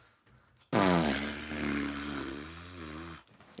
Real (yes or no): yes